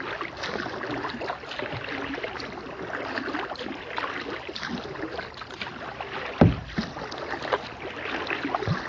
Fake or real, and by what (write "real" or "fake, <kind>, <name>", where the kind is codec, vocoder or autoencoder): real